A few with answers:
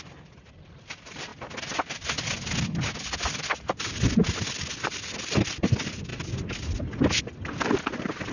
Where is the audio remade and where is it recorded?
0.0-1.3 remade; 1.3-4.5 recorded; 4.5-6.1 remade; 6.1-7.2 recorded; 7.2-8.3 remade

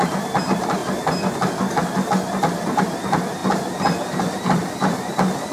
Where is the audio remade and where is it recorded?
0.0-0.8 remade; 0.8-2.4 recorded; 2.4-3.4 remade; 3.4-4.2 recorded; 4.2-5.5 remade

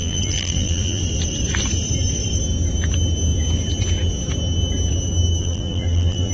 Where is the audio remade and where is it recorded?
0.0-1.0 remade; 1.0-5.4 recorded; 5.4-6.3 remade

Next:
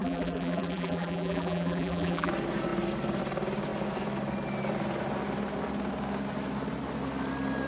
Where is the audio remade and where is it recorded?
0.0-2.3 remade; 2.3-7.7 recorded

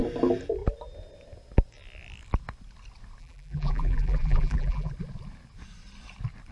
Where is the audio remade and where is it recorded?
0.0-3.2 recorded; 3.2-4.9 remade; 4.9-6.5 recorded